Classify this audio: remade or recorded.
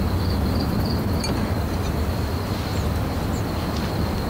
recorded